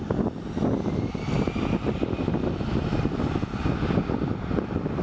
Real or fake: real